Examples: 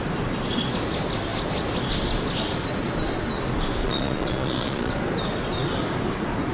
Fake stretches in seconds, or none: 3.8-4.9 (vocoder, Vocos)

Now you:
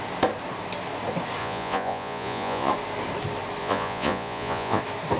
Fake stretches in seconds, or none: 1.4-2.7 (vocoder, Vocos); 3.6-4.8

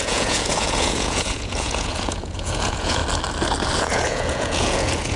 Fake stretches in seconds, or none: 0.0-3.0 (vocoder, Vocos); 3.8-5.2

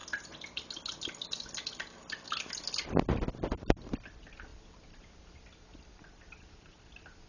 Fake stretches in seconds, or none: none